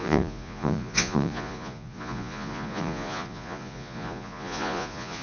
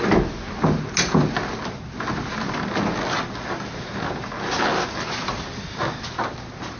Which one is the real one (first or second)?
second